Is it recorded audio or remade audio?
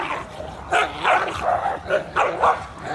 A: recorded